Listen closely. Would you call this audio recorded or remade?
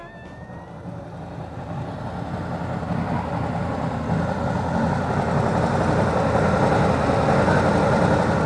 recorded